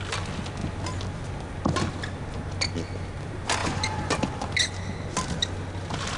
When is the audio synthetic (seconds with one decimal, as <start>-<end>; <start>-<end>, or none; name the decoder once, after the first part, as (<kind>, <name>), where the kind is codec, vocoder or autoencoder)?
3.6-4.1 (vocoder, Vocos)